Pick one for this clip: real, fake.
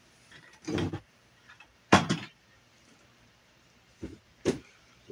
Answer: fake